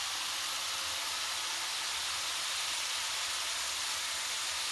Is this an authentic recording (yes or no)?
yes